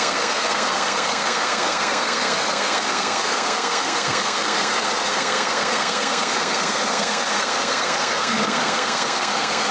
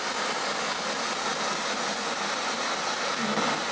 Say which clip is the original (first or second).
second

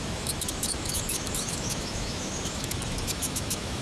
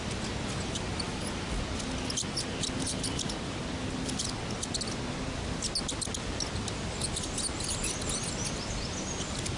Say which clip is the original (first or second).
second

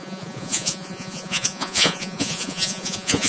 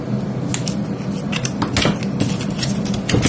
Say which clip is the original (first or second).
second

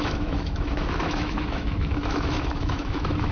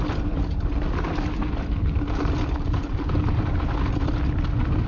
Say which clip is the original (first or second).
second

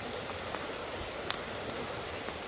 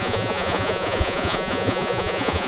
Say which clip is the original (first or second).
first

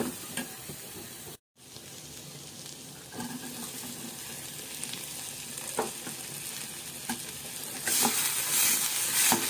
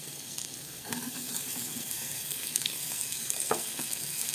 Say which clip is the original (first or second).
first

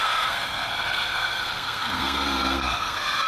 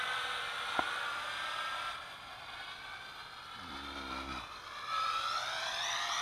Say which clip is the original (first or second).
second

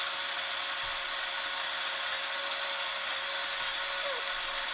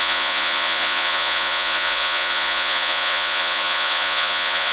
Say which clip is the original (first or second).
first